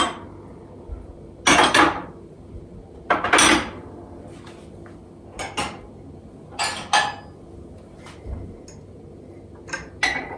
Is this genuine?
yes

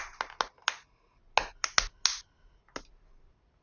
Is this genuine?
yes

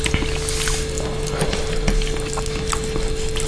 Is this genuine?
yes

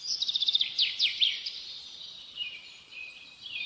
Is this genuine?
no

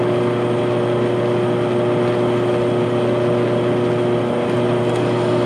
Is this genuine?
yes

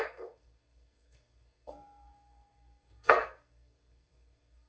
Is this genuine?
no